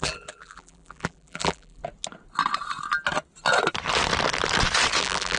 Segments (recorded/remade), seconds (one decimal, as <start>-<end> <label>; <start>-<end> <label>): 0.0-1.8 remade; 1.8-5.0 recorded; 5.0-5.4 remade